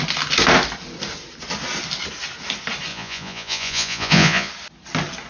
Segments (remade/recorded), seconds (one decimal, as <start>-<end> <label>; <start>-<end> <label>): 0.0-2.9 recorded; 2.9-4.5 remade; 4.5-5.3 recorded